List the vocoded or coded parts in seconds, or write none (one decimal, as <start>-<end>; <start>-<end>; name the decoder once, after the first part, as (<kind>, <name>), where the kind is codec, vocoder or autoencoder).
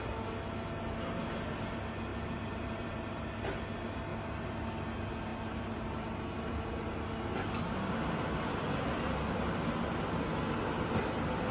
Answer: 2.1-3.4 (vocoder, BigVGAN v2); 4.1-4.7; 5.3-6.6